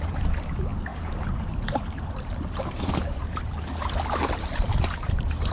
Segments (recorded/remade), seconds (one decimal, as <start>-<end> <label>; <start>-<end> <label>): 0.0-3.2 remade; 3.2-4.3 recorded; 4.3-5.5 remade